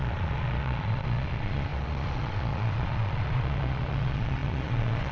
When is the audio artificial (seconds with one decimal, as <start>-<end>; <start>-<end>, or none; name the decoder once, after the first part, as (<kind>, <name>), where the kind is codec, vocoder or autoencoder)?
0.0-5.1 (vocoder, Vocos)